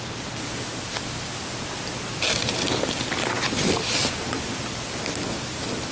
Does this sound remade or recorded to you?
recorded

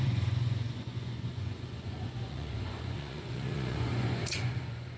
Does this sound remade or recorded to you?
remade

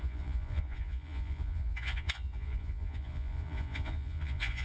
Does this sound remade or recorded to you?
remade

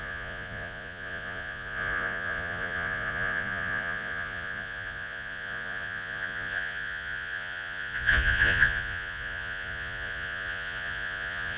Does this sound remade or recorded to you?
remade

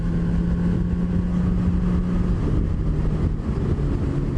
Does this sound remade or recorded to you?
recorded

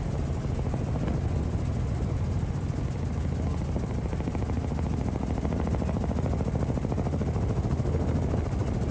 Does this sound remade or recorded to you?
recorded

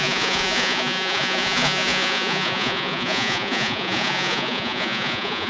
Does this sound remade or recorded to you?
remade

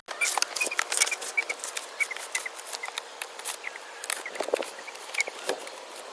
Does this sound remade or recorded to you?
recorded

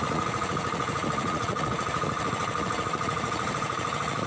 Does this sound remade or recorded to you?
remade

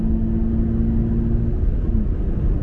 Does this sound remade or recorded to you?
recorded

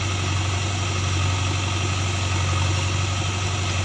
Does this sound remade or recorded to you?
recorded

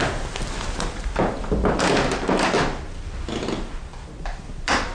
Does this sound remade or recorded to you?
recorded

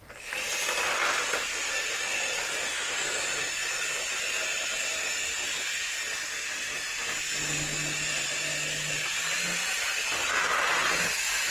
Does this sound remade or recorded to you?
recorded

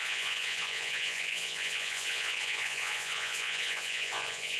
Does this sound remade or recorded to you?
remade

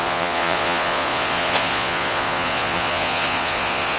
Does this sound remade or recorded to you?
remade